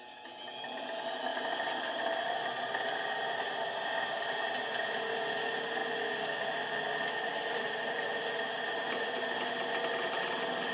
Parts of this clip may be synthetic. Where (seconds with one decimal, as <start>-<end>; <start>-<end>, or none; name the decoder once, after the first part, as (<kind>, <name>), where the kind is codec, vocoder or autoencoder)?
1.3-2.3 (vocoder, BigVGAN v2); 5.8-8.1